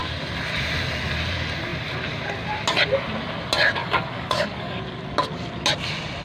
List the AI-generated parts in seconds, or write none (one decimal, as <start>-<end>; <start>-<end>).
3.8-4.8